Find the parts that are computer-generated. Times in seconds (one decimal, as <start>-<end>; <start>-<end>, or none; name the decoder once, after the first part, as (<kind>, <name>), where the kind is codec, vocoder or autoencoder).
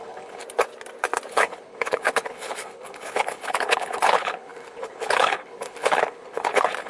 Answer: 0.0-0.4 (codec, HILCodec); 1.3-6.9